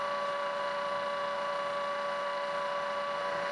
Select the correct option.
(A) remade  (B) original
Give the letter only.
A